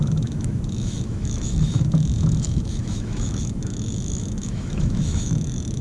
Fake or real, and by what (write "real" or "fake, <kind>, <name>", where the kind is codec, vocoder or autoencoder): fake, autoencoder, DAC-VAE